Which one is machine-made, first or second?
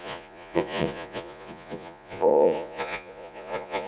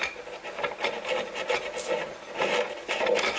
first